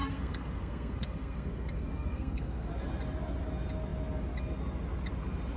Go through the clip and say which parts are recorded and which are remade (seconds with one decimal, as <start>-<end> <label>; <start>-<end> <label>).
0.0-2.7 remade; 2.7-5.6 recorded